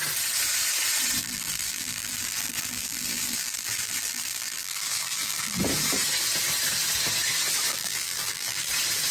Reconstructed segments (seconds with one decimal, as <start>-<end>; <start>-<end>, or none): 1.2-5.6; 7.7-8.7